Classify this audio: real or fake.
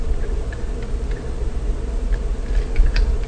real